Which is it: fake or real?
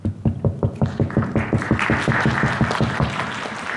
real